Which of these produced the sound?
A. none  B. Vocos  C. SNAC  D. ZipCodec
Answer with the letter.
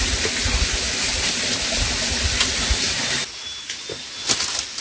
A